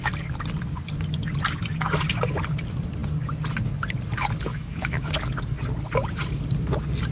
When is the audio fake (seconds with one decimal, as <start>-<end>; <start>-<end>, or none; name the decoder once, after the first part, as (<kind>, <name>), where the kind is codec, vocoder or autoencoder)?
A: 4.5-5.1 (autoencoder, DAC-VAE)

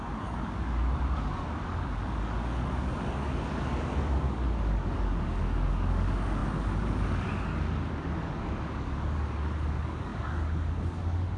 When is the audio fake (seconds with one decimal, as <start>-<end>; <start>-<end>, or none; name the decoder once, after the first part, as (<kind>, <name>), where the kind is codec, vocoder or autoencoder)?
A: 0.0-11.4 (codec, DAC)

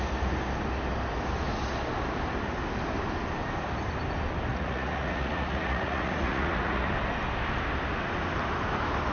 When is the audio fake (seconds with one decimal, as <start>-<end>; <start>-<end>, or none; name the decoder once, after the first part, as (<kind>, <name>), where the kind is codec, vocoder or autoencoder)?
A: 4.5-6.9 (vocoder, Vocos)